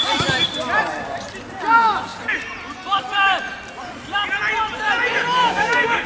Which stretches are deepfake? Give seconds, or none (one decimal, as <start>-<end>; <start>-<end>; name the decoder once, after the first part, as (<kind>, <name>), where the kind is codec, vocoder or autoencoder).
5.4-6.1 (codec, DAC)

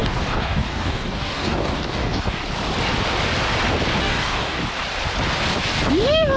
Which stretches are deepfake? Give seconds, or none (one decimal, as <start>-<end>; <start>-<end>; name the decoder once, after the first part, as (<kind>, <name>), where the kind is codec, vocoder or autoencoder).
0.0-2.4 (codec, DAC); 4.0-4.6

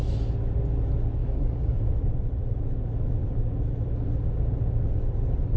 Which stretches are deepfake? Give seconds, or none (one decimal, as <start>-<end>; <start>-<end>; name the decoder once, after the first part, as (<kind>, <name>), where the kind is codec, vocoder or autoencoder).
1.2-1.8 (codec, DAC)

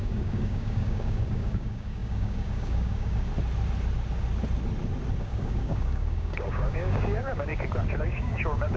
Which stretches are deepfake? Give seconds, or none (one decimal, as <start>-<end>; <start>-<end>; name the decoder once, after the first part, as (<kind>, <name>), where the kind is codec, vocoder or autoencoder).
0.0-3.3 (codec, DAC); 5.2-7.5; 8.0-8.8

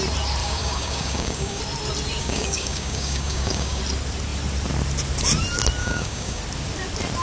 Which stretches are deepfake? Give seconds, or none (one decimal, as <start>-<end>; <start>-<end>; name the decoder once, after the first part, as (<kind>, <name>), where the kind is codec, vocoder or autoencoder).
0.4-1.6 (codec, DAC); 2.2-3.8; 5.8-6.4

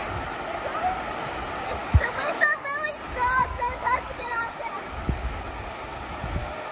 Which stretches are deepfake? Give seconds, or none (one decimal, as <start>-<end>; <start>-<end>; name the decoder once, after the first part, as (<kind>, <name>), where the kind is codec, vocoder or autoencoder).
1.8-2.9 (codec, DAC); 3.4-4.4; 5.0-5.5

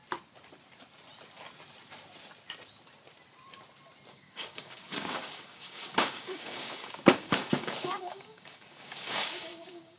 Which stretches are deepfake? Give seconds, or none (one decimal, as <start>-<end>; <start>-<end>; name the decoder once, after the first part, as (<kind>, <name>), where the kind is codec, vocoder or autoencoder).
4.1-10.0 (codec, DAC)